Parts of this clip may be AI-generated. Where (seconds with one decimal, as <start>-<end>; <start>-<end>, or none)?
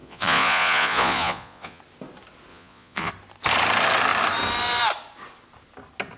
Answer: 0.0-1.8; 2.5-3.1